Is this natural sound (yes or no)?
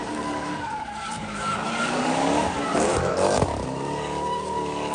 no